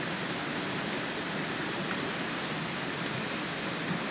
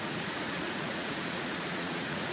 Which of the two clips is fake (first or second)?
second